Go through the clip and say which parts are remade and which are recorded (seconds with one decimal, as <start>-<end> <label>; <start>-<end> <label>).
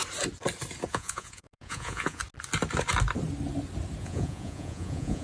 0.0-0.9 recorded; 0.9-2.2 remade; 2.2-4.0 recorded; 4.0-5.2 remade